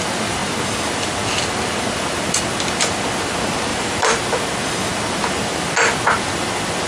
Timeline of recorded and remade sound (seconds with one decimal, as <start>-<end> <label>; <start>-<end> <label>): 0.0-3.7 recorded; 3.7-4.2 remade; 4.2-6.9 recorded